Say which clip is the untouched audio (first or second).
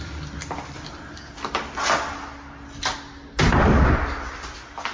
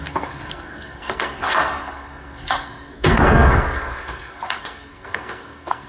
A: first